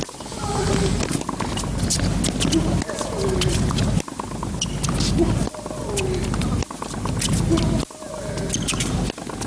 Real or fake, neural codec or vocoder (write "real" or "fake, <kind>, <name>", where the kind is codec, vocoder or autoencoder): real